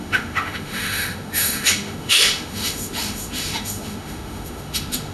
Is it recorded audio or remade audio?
remade